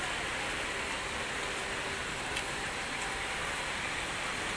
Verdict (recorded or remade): recorded